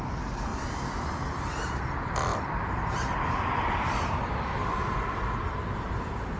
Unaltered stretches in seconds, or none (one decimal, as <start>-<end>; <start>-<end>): 0.0-2.3